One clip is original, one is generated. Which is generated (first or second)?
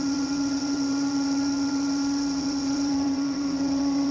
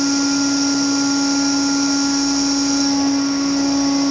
first